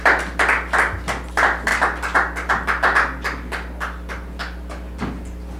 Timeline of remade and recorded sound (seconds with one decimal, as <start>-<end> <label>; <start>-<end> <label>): 0.0-5.6 recorded